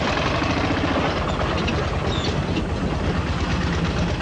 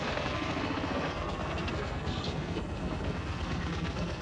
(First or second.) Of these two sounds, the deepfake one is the second